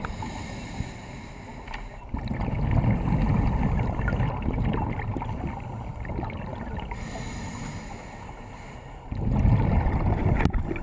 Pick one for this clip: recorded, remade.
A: recorded